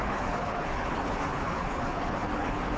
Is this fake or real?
fake